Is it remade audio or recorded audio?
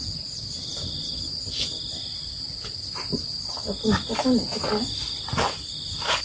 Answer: recorded